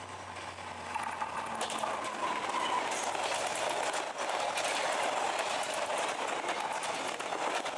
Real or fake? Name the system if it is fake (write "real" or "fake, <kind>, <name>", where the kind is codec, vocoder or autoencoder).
real